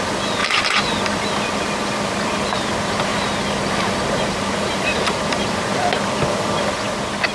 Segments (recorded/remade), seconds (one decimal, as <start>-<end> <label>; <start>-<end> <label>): 0.0-0.4 recorded; 0.4-1.2 remade; 1.2-3.1 recorded; 3.1-5.7 remade; 5.7-7.3 recorded